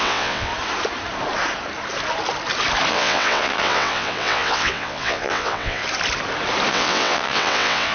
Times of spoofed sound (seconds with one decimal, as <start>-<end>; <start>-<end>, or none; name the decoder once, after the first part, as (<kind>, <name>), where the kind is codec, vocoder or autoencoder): 0.0-0.5 (vocoder, WaveNeXt); 2.9-5.8; 6.7-7.9